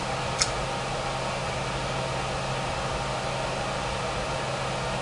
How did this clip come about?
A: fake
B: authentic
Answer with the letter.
B